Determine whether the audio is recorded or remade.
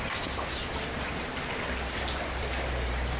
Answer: recorded